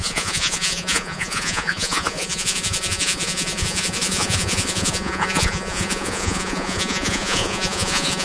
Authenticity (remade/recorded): remade